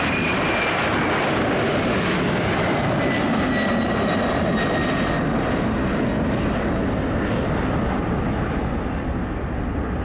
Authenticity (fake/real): real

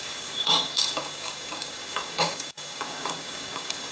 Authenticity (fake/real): fake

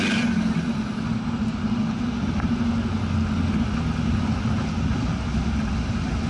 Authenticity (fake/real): real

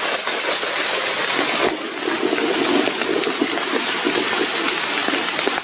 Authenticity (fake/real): real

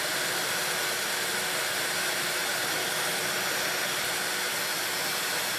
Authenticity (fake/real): real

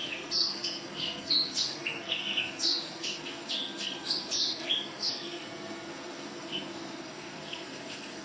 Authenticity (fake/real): fake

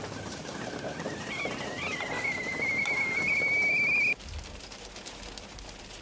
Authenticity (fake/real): real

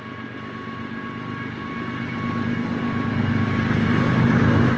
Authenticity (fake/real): real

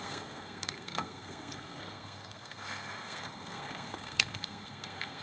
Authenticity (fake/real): fake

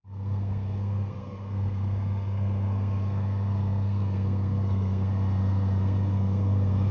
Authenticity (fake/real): fake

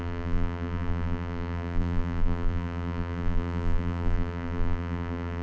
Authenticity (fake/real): fake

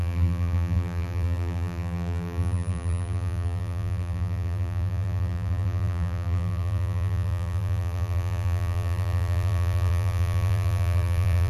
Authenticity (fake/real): fake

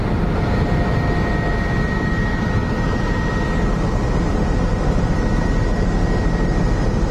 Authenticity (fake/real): real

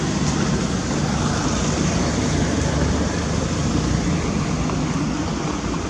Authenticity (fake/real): real